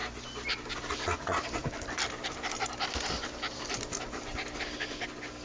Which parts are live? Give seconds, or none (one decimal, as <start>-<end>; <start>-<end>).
0.0-1.6; 2.5-5.4